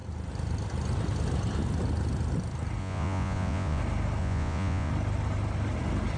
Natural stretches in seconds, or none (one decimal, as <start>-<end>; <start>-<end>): 0.0-2.8; 3.8-4.2; 4.9-6.2